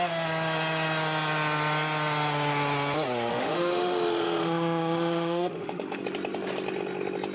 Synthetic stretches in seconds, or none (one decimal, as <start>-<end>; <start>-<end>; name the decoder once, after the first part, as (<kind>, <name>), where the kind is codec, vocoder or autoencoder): 3.3-6.0 (autoencoder, DAC-VAE)